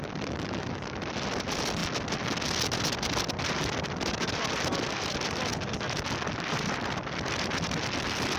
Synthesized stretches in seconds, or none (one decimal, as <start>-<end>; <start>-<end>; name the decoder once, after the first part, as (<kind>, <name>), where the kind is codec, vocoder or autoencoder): 0.0-1.8 (vocoder, BigVGAN v2); 4.8-5.5; 6.5-8.4